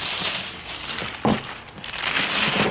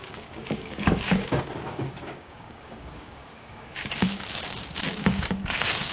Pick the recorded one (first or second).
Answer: first